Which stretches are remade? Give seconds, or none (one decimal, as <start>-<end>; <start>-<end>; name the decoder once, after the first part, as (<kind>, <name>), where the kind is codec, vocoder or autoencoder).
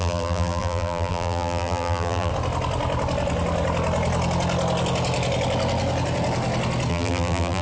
0.0-2.3 (vocoder, BigVGAN v2); 6.9-7.6